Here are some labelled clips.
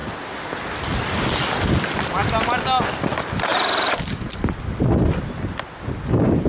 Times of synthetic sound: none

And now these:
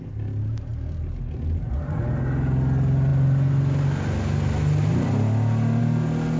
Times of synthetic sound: none

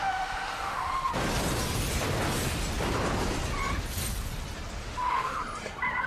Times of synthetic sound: 0.0-1.1 (autoencoder, DAC-VAE); 4.8-5.4

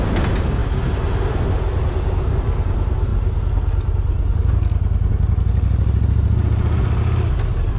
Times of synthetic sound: none

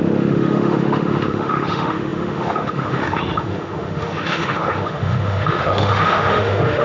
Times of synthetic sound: 0.0-6.8 (autoencoder, DAC-VAE)